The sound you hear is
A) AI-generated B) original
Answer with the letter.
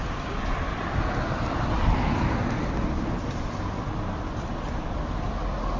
B